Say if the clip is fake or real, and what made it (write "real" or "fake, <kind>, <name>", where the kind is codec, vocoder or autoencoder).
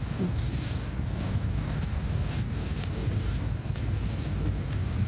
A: fake, codec, DAC